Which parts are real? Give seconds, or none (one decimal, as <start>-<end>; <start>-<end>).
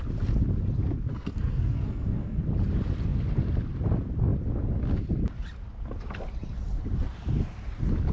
0.0-1.1; 2.4-8.1